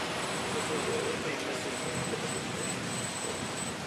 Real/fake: fake